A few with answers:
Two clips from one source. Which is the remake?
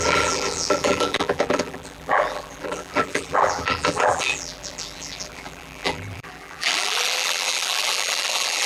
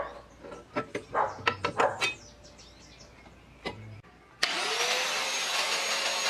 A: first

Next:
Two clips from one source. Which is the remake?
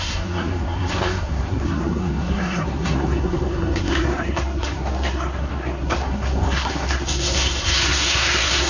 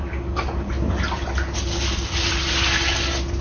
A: first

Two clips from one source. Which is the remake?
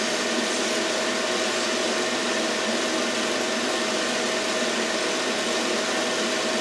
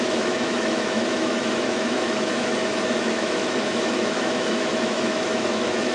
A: second